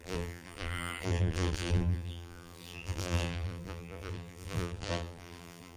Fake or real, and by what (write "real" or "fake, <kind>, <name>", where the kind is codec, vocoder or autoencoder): fake, vocoder, BigVGAN v2